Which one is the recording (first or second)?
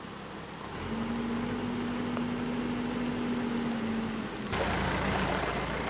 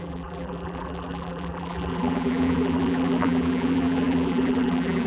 first